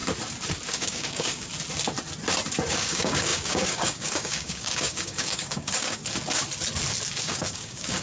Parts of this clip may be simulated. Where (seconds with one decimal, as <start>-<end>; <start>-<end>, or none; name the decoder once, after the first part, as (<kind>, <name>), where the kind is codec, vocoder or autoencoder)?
0.7-1.5 (codec, DAC); 2.7-6.0; 7.2-8.0